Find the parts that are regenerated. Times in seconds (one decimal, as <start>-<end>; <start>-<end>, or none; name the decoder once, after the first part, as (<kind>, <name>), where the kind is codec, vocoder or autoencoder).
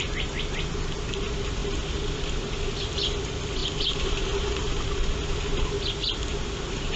none